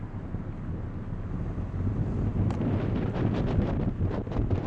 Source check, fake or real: real